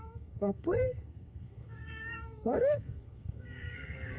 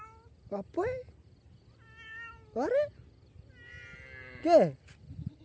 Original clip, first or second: second